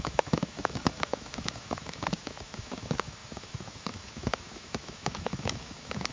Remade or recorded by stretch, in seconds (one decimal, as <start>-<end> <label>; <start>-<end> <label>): 0.0-6.1 remade